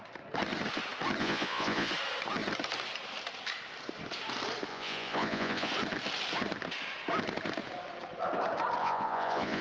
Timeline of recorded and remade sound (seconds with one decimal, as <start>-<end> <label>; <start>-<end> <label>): 0.0-1.2 recorded; 1.2-1.9 remade; 1.9-4.7 recorded; 4.7-5.7 remade; 5.7-8.8 recorded; 8.8-9.6 remade